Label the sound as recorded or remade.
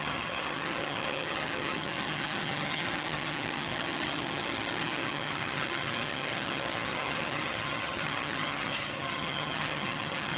remade